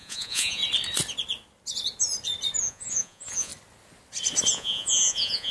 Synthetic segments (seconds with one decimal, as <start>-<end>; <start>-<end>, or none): 0.0-0.6; 2.6-3.5; 4.5-5.5